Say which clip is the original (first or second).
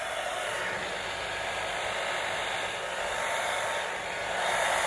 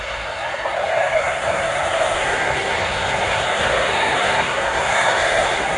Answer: first